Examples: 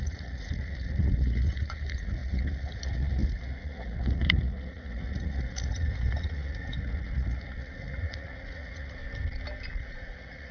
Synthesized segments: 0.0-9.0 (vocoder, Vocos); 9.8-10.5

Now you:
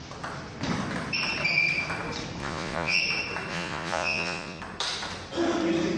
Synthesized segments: 2.4-3.0 (vocoder, Vocos); 3.5-4.6

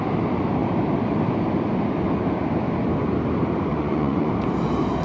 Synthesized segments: 3.7-4.3 (vocoder, Vocos)